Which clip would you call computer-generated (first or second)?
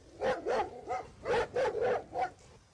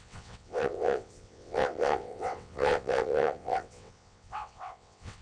second